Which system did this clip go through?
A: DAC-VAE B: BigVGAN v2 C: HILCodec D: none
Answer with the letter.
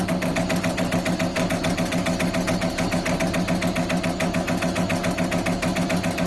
D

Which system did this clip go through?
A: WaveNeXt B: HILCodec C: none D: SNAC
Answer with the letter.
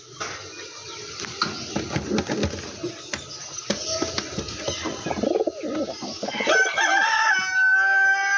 C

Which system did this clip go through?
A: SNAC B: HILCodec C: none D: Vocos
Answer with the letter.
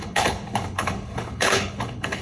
B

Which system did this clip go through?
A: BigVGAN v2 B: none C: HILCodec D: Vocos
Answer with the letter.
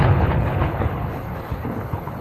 C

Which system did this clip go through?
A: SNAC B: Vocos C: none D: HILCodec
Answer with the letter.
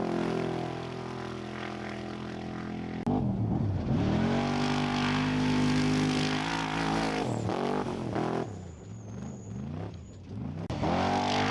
C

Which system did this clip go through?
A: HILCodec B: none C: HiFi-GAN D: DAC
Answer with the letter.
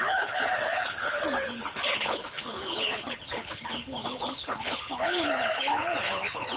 A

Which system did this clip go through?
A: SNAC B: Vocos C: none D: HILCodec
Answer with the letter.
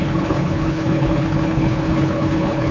D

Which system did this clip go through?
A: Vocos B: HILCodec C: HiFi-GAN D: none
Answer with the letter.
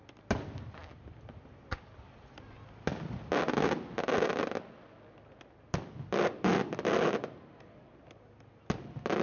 D